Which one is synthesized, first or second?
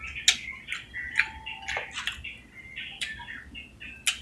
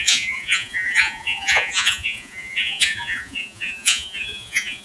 second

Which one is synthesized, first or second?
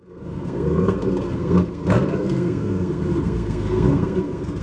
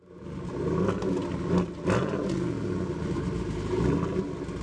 first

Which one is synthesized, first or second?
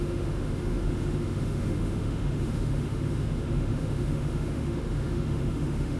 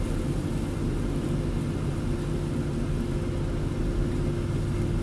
first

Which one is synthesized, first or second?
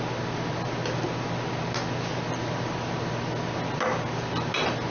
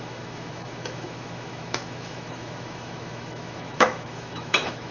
second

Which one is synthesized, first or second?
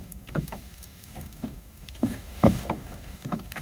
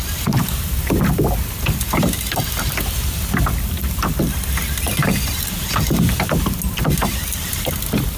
first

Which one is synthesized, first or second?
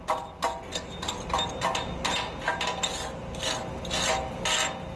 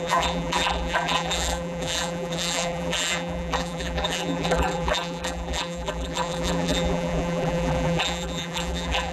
second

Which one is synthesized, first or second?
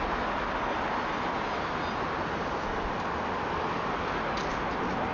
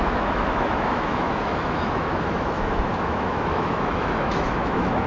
second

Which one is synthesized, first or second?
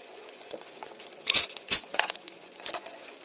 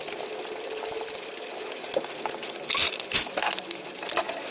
first